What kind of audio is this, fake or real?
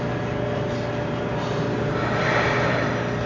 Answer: real